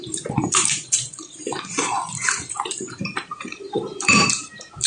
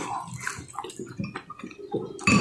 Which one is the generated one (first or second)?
first